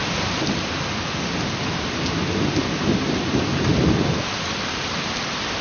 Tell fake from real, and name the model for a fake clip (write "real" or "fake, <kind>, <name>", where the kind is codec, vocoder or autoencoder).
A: real